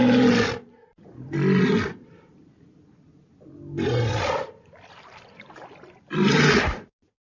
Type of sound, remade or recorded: recorded